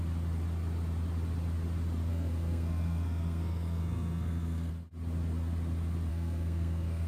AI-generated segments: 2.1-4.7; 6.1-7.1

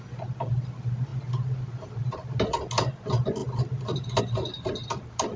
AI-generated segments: none